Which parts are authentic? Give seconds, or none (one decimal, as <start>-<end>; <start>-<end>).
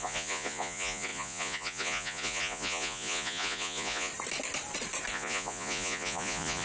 4.1-5.1